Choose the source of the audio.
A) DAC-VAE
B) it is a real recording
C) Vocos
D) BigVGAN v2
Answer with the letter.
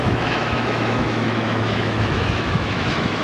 A